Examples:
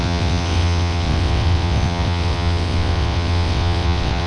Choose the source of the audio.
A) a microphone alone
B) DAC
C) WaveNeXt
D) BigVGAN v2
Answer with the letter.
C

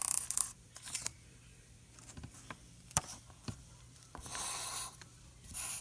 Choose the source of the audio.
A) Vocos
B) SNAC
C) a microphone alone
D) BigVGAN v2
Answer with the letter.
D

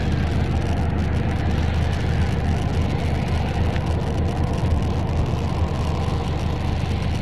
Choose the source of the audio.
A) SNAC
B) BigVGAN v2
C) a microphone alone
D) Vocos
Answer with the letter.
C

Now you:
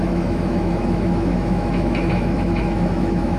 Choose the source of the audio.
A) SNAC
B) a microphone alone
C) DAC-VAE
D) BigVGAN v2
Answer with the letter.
C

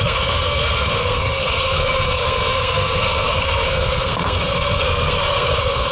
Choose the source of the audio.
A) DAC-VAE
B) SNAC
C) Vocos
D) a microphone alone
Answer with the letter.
B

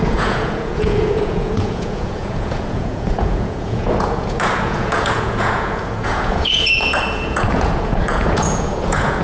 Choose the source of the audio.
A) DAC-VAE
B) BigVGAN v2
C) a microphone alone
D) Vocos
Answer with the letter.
D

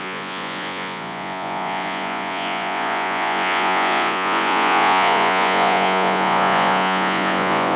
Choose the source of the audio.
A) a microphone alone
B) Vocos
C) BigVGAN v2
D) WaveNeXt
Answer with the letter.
B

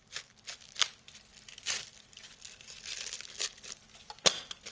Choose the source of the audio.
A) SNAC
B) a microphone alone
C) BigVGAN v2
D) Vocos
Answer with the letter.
B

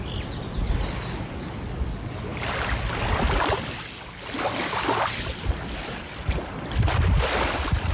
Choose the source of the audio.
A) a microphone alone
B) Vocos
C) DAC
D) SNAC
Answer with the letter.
A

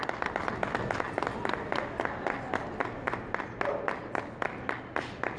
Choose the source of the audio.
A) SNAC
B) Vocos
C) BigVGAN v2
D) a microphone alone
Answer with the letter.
D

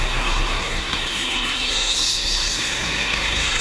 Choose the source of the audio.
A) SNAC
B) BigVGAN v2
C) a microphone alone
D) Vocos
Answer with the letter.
A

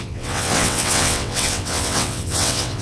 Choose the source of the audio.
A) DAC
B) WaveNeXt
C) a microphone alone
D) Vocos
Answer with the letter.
B